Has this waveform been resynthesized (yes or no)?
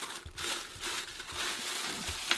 no